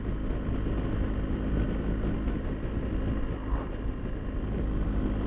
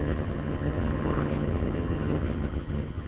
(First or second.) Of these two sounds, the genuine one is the first